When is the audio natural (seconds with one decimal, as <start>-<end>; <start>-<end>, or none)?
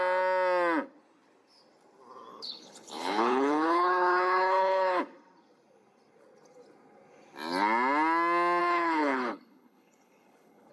0.0-2.3; 5.0-8.6